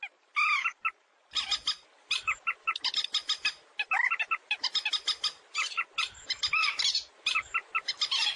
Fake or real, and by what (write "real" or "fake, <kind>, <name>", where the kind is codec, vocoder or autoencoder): real